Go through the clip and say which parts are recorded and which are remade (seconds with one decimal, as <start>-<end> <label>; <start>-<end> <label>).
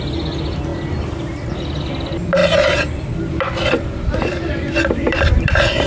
0.0-2.4 recorded; 2.4-5.9 remade